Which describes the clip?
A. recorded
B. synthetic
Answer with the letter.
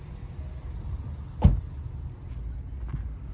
A